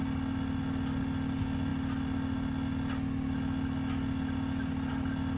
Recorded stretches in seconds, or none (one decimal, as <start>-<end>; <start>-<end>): 0.0-5.4